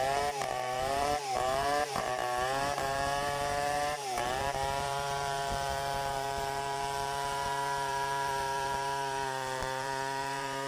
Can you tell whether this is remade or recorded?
remade